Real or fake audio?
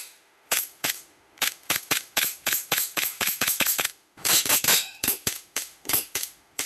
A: fake